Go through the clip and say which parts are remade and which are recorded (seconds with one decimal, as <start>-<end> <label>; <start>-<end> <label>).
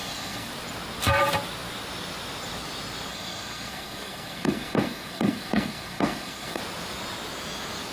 0.0-0.5 remade; 0.5-3.1 recorded; 3.1-6.6 remade; 6.6-7.9 recorded